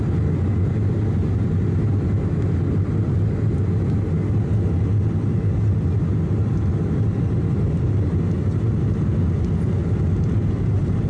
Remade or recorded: recorded